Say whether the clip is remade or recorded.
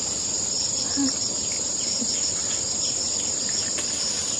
recorded